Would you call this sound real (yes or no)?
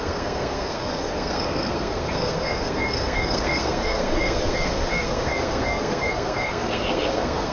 no